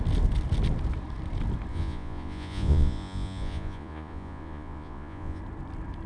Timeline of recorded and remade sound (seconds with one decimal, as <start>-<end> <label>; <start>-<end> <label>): 0.0-1.7 recorded; 1.7-5.4 remade; 5.4-6.1 recorded